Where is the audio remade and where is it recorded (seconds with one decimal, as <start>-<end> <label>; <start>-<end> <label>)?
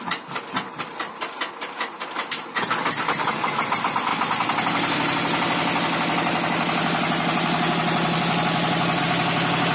0.0-9.7 recorded